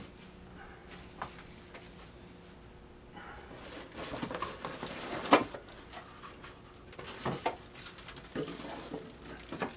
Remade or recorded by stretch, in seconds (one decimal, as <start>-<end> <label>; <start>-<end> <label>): 0.0-9.8 recorded